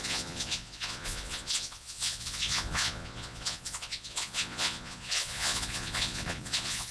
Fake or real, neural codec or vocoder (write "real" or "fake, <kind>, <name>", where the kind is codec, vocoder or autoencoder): fake, vocoder, Vocos